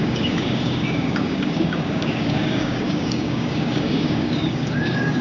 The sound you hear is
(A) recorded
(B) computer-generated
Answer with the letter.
B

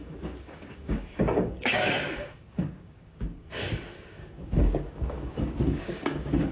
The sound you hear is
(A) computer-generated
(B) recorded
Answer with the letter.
A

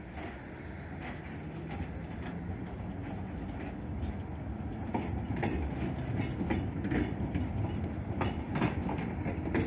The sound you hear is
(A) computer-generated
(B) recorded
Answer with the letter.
B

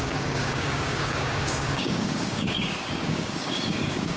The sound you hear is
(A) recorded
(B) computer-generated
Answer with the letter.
B